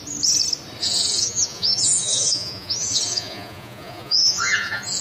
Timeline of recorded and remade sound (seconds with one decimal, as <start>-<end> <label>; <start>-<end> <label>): 0.0-0.8 recorded; 0.8-5.0 remade